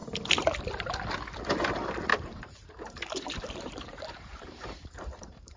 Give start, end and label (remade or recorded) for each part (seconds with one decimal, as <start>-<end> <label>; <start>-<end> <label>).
0.0-2.1 recorded; 2.1-5.6 remade